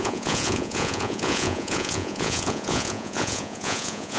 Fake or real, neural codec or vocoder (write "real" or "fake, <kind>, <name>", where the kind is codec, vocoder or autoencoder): fake, vocoder, Vocos